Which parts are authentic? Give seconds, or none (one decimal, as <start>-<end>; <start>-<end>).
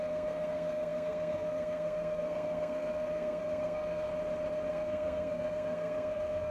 4.1-4.7